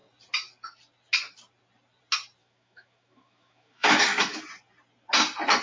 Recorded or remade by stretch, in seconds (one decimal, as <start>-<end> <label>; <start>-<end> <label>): 0.0-2.4 recorded; 2.4-4.4 remade; 4.4-5.6 recorded